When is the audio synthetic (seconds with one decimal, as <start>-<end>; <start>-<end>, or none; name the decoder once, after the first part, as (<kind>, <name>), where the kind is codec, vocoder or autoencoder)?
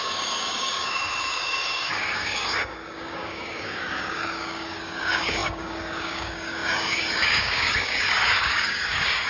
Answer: 0.0-9.3 (codec, DAC)